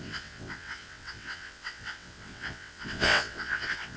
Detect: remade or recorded remade